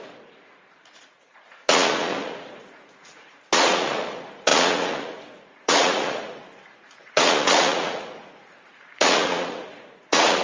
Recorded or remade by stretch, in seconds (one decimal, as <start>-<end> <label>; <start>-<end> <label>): 0.0-10.4 remade